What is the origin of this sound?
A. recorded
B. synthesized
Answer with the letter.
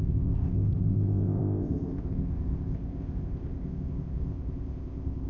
B